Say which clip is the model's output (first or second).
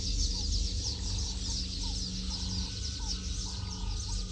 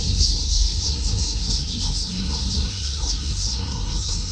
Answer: second